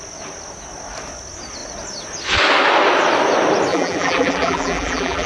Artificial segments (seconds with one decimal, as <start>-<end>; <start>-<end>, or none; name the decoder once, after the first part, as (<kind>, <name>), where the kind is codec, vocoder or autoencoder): 3.7-5.3 (vocoder, BigVGAN v2)